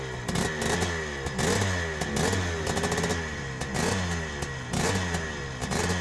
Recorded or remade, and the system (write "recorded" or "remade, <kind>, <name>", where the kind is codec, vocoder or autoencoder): recorded